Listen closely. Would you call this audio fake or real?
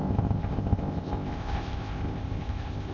fake